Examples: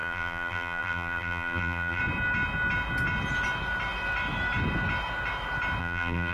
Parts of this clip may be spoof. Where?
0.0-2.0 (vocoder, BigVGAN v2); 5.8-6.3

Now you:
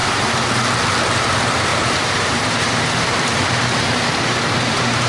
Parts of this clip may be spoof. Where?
1.7-5.1 (vocoder, BigVGAN v2)

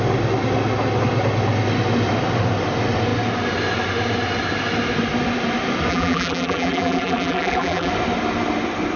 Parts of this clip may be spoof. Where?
5.9-7.9 (vocoder, BigVGAN v2)